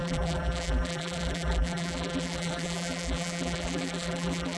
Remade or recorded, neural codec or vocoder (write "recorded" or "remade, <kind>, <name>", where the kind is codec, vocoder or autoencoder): remade, vocoder, BigVGAN v2